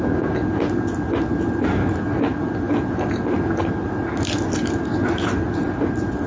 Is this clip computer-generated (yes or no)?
no